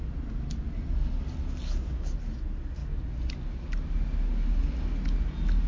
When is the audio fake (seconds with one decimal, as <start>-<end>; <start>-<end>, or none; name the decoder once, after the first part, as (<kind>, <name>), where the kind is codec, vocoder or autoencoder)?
none